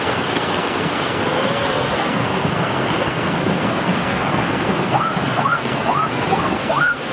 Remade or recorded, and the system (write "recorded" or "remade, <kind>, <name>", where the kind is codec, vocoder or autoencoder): remade, codec, SNAC